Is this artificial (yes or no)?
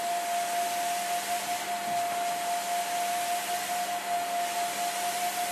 no